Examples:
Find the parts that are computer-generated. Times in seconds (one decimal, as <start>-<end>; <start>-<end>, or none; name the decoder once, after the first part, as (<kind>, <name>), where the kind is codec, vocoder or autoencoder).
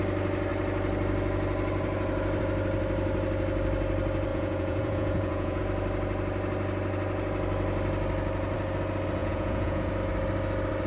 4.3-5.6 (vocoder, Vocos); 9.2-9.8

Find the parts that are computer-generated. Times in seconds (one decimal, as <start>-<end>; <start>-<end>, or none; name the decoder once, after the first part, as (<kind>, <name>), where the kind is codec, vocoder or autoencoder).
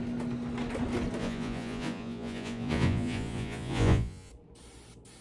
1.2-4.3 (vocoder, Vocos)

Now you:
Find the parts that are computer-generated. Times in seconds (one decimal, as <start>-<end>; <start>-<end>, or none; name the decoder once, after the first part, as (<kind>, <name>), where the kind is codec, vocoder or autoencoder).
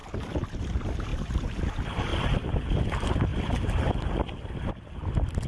none